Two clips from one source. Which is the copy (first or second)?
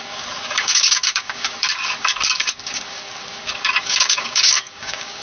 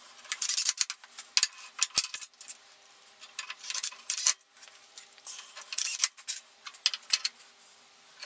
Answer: first